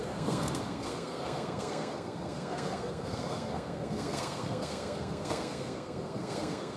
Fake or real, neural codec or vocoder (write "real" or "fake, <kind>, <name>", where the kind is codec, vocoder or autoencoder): fake, codec, SNAC